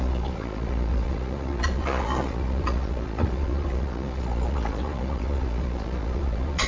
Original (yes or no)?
no